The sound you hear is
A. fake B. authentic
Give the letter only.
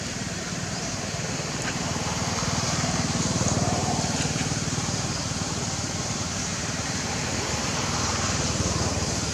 A